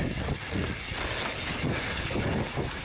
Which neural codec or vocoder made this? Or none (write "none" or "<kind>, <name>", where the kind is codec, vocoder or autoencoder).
none